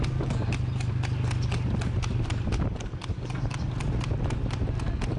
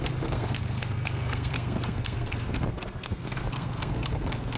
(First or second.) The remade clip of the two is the second